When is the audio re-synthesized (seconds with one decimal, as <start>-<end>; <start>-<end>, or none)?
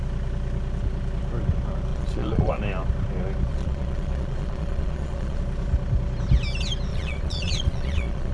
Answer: 1.9-2.6; 3.5-5.4; 6.9-8.3